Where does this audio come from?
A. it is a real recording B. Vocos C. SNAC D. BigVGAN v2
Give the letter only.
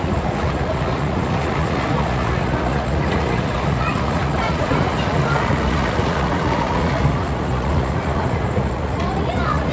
B